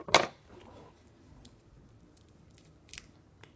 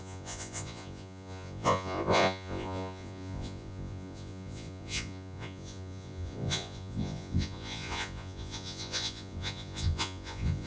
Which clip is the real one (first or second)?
first